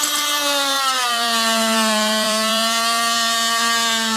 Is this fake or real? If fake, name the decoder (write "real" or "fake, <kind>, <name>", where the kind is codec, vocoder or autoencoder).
fake, vocoder, BigVGAN v2